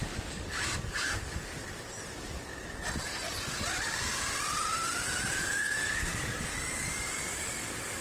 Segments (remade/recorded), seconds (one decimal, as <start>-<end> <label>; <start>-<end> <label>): 0.0-1.6 remade; 1.6-5.4 recorded; 5.4-8.0 remade